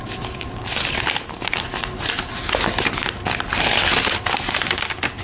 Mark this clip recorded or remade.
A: recorded